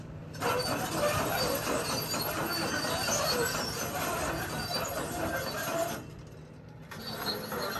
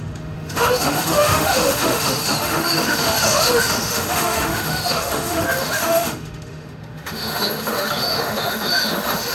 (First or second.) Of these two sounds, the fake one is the second